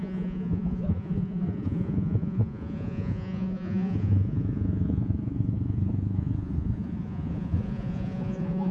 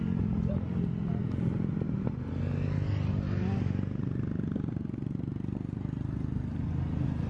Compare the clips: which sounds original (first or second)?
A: second